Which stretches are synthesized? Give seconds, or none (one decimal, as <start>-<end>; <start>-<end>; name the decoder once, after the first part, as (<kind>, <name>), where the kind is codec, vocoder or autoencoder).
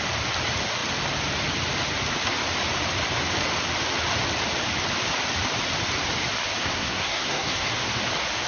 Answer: 6.6-7.7 (codec, SNAC)